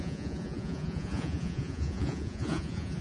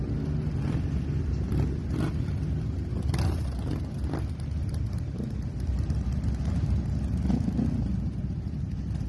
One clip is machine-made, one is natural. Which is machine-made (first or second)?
first